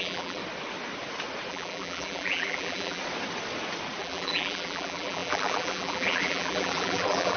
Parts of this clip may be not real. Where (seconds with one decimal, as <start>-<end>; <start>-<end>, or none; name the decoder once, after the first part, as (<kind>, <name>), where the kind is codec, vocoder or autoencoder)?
0.0-0.4 (vocoder, BigVGAN v2); 1.5-3.0; 4.0-7.4